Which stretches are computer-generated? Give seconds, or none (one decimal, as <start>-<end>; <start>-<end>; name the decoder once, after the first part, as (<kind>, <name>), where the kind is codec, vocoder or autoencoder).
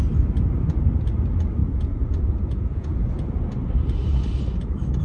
1.6-3.1 (vocoder, Vocos)